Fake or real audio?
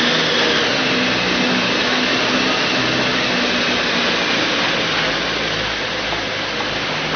real